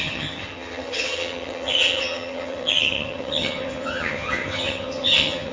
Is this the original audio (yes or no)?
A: no